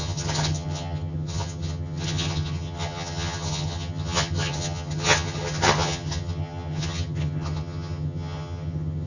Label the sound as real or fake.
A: fake